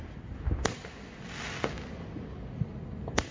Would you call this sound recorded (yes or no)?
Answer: yes